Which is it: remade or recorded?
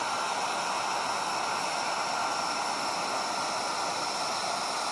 recorded